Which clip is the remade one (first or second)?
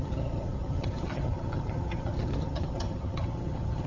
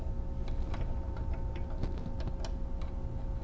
first